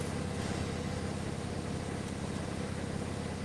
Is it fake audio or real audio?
real